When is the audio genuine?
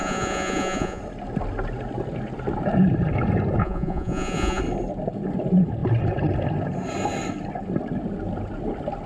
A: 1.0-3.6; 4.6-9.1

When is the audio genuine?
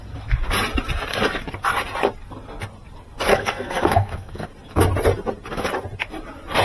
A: 0.0-3.3; 4.5-6.6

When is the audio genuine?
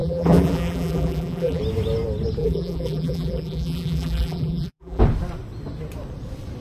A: 1.6-2.4; 5.0-6.6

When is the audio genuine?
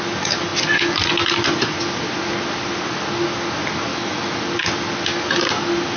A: 0.0-3.9; 4.4-6.0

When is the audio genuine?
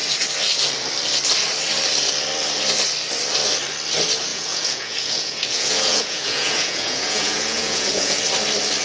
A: 0.0-4.3; 8.2-8.8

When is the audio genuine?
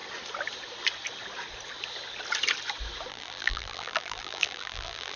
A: 0.0-3.1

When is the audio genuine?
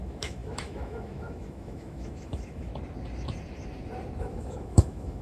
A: 2.7-4.2